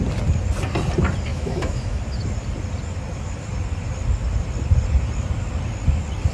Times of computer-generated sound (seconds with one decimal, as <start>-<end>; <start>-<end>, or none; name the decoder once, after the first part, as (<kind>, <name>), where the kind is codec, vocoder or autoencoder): 1.3-2.0 (autoencoder, DAC-VAE)